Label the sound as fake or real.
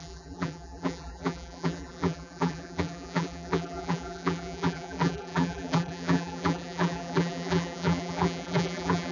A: fake